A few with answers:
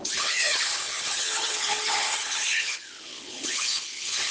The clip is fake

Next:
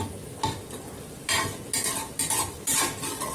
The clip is real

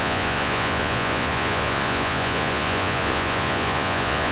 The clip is fake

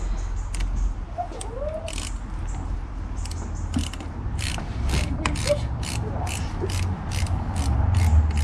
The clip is real